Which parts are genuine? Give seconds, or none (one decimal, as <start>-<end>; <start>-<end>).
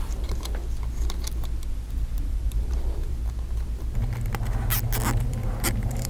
0.6-1.7; 3.2-5.2